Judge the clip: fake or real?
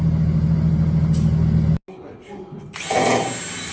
real